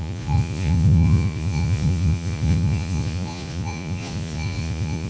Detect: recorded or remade remade